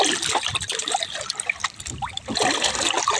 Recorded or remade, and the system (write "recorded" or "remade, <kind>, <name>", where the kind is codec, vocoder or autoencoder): recorded